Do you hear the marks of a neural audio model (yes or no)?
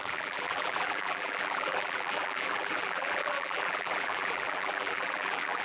yes